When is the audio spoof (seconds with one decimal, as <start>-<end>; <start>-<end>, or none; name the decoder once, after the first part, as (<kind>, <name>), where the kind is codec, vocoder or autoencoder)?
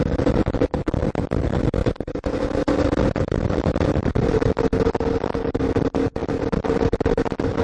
1.8-4.5 (vocoder, BigVGAN v2); 6.2-7.6